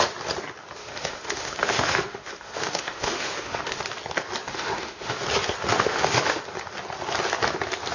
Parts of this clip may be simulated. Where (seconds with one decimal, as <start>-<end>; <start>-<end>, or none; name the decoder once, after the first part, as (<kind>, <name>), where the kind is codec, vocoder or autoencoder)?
0.8-3.8 (autoencoder, DAC-VAE); 4.5-5.2; 5.7-6.4